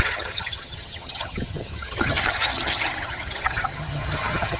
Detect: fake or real fake